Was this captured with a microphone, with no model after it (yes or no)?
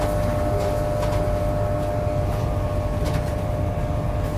yes